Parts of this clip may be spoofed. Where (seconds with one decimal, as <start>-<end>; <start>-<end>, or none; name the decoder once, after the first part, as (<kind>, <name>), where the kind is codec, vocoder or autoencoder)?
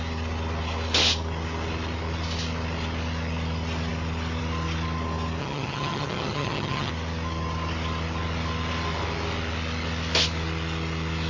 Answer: 5.4-6.9 (vocoder, HiFi-GAN)